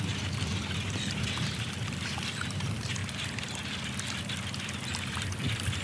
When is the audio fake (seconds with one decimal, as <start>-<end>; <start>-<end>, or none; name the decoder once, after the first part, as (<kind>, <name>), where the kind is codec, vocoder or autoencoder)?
0.0-3.0 (vocoder, BigVGAN v2)